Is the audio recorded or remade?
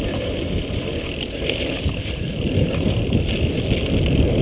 recorded